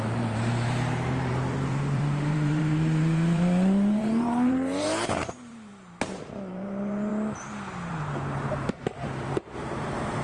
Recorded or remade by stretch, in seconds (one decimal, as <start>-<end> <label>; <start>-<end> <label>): 0.0-5.7 remade; 5.7-6.5 recorded; 6.5-7.1 remade; 7.1-7.9 recorded; 7.9-10.2 remade